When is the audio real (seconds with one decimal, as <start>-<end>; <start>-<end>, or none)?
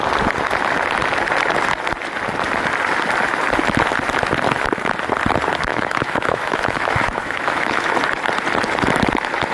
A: 0.0-5.7; 7.9-9.5